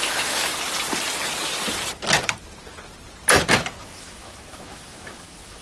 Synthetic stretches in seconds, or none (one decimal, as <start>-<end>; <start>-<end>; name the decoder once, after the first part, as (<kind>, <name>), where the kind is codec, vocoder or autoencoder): 0.0-0.5 (autoencoder, DAC-VAE); 3.8-5.6